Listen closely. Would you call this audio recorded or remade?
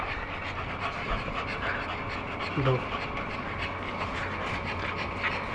recorded